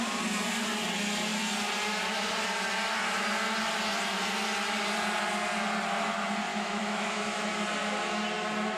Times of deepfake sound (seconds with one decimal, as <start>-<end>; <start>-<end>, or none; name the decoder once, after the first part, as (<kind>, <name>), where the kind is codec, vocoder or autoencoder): 6.5-7.5 (autoencoder, DAC-VAE)